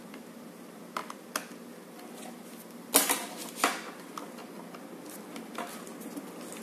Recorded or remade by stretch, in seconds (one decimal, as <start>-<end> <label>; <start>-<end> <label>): 0.0-6.6 recorded